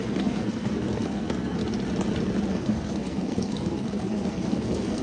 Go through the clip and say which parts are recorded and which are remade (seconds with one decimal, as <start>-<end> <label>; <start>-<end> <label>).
0.0-1.6 remade; 1.6-2.5 recorded; 2.5-5.0 remade